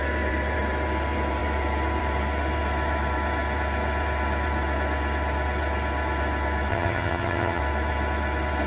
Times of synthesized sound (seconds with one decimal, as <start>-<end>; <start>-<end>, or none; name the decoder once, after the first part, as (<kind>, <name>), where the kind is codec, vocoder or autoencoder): 6.7-7.6 (vocoder, HiFi-GAN)